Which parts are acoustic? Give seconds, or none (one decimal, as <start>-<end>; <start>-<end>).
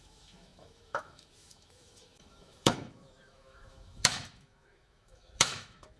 none